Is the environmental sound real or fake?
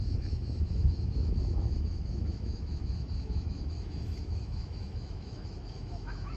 fake